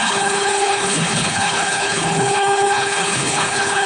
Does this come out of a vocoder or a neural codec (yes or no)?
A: yes